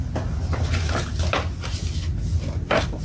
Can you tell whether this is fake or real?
real